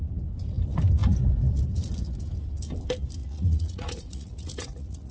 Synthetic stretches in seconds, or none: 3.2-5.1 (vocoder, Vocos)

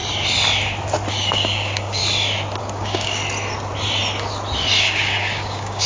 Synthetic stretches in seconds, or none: 1.1-2.0 (codec, DAC); 2.6-3.2; 4.8-5.9

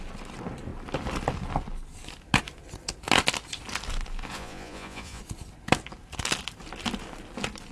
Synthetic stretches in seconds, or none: 4.3-5.2 (vocoder, Vocos)

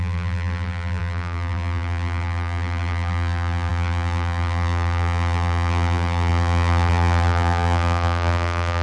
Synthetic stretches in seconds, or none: 0.0-8.8 (vocoder, BigVGAN v2)

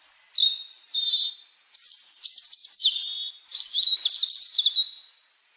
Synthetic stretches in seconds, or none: 0.4-1.3 (vocoder, BigVGAN v2); 2.6-3.9